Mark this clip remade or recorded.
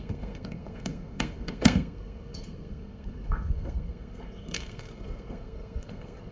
remade